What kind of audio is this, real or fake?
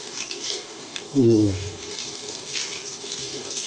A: fake